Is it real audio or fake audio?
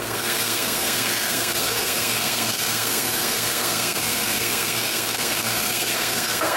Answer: fake